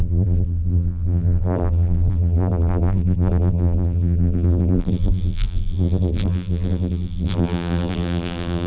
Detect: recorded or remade remade